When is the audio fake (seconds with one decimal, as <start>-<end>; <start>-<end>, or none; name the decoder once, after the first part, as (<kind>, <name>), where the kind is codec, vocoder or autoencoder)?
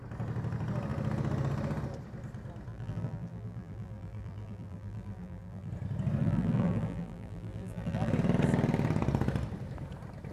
2.7-5.7 (vocoder, BigVGAN v2); 6.2-8.1